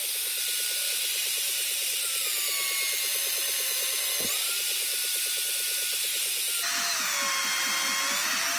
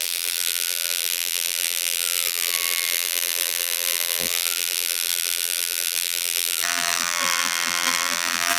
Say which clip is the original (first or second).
first